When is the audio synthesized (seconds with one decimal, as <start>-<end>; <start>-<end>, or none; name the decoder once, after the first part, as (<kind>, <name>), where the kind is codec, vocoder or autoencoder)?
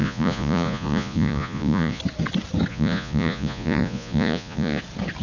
0.0-2.0 (vocoder, Vocos); 2.7-4.8